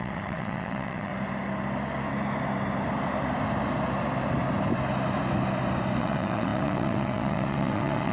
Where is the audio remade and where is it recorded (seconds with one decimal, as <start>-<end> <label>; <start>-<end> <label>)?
0.0-1.1 remade; 1.1-6.0 recorded; 6.0-8.1 remade